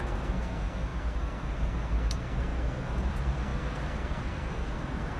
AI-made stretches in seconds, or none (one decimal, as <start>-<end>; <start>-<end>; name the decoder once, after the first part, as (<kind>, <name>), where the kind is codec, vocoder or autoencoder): 0.0-5.2 (codec, SNAC)